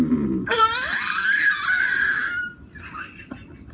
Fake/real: real